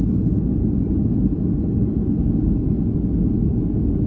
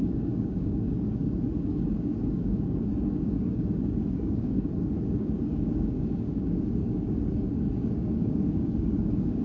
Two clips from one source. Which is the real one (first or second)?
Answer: first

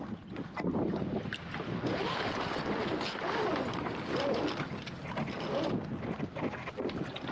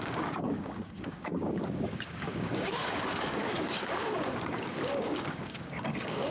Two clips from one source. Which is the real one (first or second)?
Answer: first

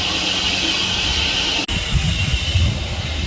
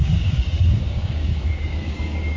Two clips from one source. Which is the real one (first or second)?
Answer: first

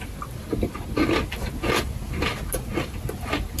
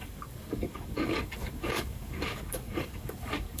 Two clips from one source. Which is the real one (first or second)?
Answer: first